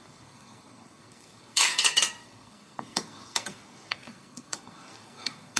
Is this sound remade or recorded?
remade